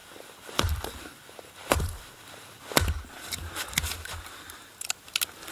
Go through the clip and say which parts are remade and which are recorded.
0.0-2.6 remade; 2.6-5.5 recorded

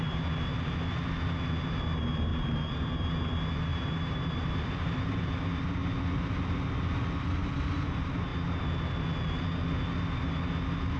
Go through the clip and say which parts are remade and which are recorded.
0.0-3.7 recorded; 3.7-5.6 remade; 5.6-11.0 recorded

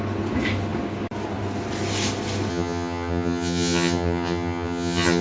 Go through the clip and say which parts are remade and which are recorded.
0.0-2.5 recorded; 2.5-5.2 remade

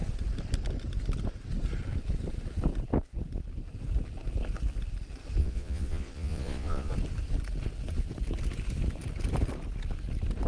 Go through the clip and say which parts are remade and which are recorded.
0.0-5.4 recorded; 5.4-6.9 remade; 6.9-10.5 recorded

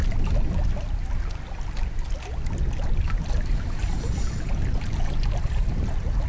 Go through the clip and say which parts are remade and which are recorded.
0.0-6.3 recorded